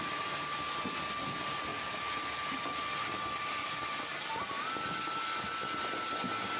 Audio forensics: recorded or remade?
recorded